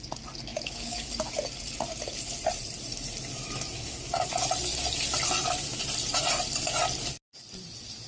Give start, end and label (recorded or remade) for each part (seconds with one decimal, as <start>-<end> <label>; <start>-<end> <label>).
0.0-0.5 recorded; 0.5-1.1 remade; 1.1-3.3 recorded; 3.3-4.3 remade; 4.3-8.1 recorded